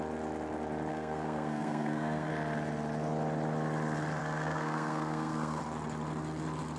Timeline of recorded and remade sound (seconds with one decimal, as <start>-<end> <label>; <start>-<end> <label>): 0.0-0.9 recorded; 0.9-2.3 remade; 2.3-4.2 recorded; 4.2-5.6 remade; 5.6-6.8 recorded